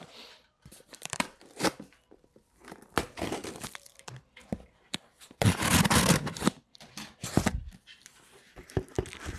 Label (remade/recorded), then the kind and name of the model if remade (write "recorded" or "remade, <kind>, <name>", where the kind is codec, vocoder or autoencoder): remade, vocoder, BigVGAN v2